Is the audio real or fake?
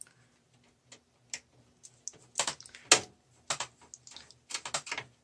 real